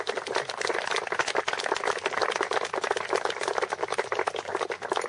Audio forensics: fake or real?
real